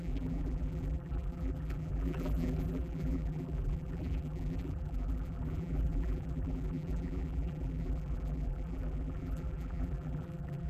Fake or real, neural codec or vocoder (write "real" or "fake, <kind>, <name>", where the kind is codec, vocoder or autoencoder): fake, vocoder, BigVGAN v2